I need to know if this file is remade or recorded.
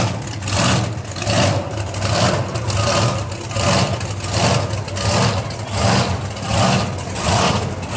recorded